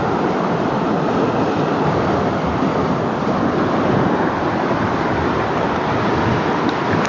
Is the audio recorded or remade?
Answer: recorded